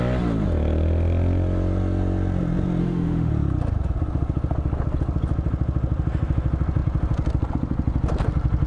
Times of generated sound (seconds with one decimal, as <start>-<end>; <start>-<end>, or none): 2.8-3.3